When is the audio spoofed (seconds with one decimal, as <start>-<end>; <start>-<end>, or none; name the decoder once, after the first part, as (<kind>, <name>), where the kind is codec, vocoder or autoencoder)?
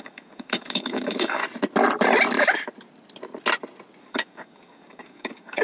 0.0-1.4 (codec, DAC); 4.0-5.6